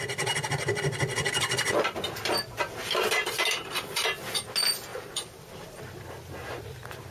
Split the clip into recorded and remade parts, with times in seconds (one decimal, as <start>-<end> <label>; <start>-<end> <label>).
0.0-4.9 recorded; 4.9-5.7 remade; 5.7-7.1 recorded

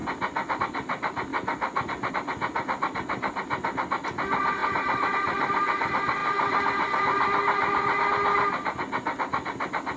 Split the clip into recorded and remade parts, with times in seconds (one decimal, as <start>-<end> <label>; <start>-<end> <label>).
0.0-10.0 recorded

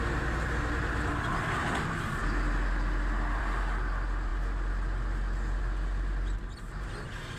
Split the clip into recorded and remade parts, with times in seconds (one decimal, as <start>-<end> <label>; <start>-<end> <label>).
0.0-7.4 recorded

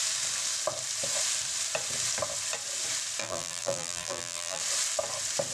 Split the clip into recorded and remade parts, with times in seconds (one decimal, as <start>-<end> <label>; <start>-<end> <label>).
0.0-3.2 recorded; 3.2-4.6 remade; 4.6-5.5 recorded

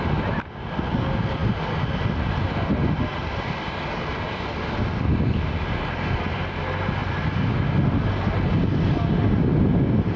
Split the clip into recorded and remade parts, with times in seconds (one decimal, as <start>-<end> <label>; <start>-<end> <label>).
0.0-10.2 recorded

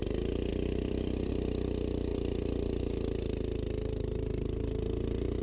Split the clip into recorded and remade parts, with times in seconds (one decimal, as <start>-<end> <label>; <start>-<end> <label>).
0.0-0.5 recorded; 0.5-1.3 remade; 1.3-2.1 recorded; 2.1-2.8 remade; 2.8-5.4 recorded

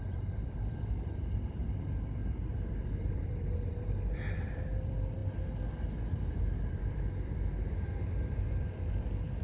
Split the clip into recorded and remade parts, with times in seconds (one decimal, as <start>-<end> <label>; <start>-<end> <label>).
0.0-2.2 remade; 2.2-3.1 recorded; 3.1-9.4 remade